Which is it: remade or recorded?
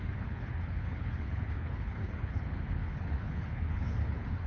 remade